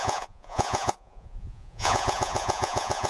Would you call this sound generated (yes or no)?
yes